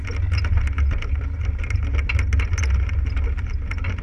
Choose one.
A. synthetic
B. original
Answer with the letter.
B